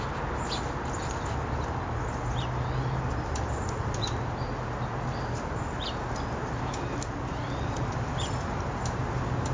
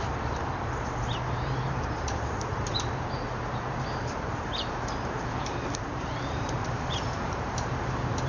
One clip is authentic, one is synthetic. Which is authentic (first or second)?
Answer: first